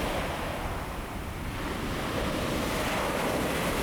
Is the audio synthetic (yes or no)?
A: no